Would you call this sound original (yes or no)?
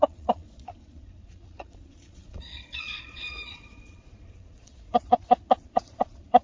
no